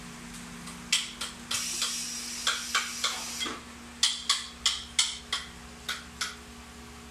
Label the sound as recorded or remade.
recorded